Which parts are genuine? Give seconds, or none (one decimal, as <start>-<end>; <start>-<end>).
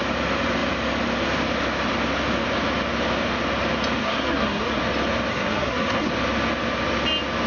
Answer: 0.0-4.0; 4.8-5.3; 6.1-7.5